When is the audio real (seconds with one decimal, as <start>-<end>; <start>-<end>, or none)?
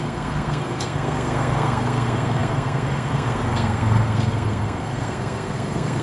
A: none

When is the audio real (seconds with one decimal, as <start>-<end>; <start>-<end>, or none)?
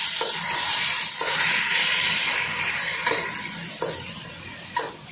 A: 0.0-5.1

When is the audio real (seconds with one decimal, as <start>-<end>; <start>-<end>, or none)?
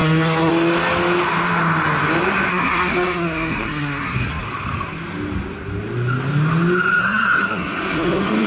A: 0.5-2.5; 4.4-7.0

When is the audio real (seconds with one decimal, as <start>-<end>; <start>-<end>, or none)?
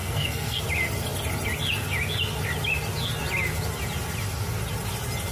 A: 0.6-5.3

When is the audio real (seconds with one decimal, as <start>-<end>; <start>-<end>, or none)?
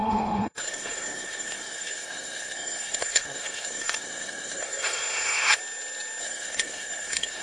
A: 5.6-6.2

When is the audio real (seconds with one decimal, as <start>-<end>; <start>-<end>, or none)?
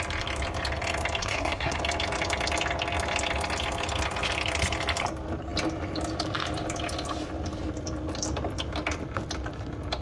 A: 0.0-1.2; 1.8-10.0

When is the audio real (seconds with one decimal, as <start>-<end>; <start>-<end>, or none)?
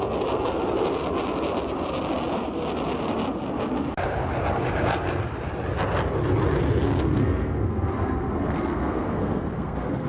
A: 0.0-6.8